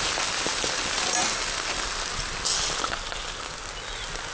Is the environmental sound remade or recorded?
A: recorded